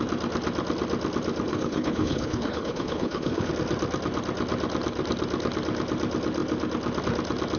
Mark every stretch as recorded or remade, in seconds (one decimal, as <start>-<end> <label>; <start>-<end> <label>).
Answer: 0.0-1.5 recorded; 1.5-3.5 remade; 3.5-7.6 recorded